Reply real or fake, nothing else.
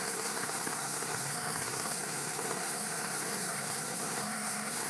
fake